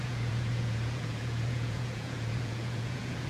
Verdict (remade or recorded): remade